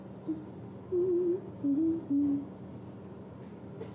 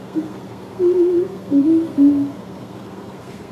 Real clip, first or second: first